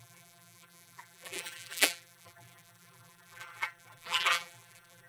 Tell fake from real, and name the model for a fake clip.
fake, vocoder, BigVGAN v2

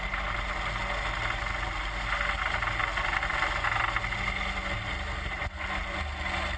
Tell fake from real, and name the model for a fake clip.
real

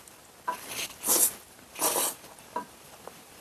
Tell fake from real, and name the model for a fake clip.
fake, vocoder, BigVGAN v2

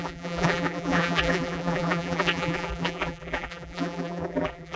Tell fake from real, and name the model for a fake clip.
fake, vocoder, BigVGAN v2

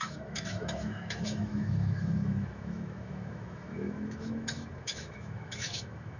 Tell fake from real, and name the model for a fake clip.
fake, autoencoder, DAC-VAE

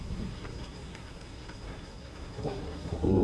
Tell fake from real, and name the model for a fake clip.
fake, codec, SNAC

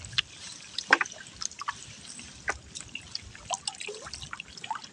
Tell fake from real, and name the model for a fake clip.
real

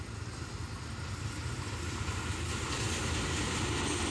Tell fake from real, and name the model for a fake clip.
real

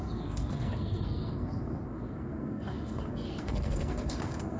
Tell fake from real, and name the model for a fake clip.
fake, codec, SNAC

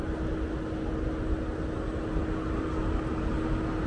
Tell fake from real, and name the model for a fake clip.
real